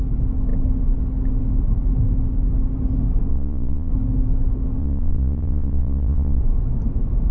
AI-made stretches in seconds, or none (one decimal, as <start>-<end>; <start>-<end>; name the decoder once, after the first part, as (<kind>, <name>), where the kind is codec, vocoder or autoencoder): 3.3-3.9 (vocoder, Vocos); 4.8-6.4